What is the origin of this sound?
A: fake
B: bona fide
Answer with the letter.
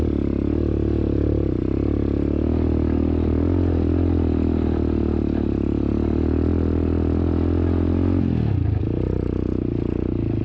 B